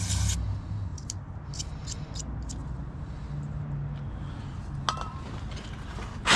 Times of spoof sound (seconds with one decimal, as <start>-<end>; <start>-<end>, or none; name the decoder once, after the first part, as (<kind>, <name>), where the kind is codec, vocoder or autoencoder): none